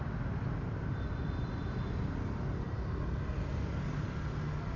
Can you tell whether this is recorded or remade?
recorded